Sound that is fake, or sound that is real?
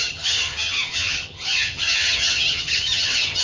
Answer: fake